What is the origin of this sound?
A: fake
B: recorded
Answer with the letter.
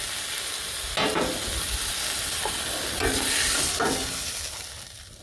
B